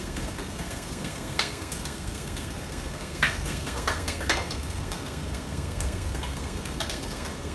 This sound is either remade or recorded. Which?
remade